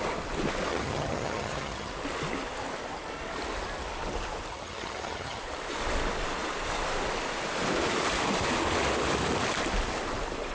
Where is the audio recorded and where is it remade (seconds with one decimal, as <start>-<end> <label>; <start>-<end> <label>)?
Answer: 0.0-0.7 recorded; 0.7-1.9 remade; 1.9-4.5 recorded; 4.5-5.4 remade; 5.4-10.5 recorded